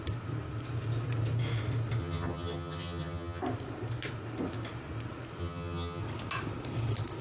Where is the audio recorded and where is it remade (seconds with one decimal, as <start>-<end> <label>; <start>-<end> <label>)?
0.0-2.0 recorded; 2.0-3.4 remade; 3.4-5.4 recorded; 5.4-6.0 remade; 6.0-7.2 recorded

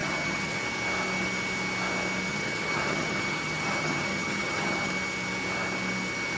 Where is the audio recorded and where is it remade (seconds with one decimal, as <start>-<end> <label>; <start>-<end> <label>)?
0.0-0.6 remade; 0.6-2.3 recorded; 2.3-4.9 remade; 4.9-6.4 recorded

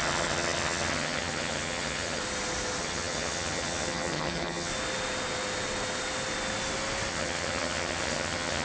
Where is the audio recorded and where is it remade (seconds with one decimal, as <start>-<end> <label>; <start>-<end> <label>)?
0.0-2.2 remade; 2.2-2.8 recorded; 2.8-4.7 remade; 4.7-7.1 recorded; 7.1-8.6 remade

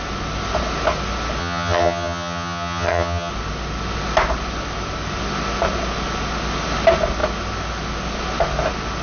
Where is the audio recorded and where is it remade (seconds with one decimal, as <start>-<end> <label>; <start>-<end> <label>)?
0.0-1.4 recorded; 1.4-3.3 remade; 3.3-9.0 recorded

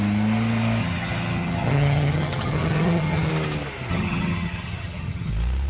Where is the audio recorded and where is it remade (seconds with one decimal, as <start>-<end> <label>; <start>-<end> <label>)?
0.0-0.8 recorded; 0.8-3.3 remade; 3.3-3.9 recorded; 3.9-5.3 remade; 5.3-5.7 recorded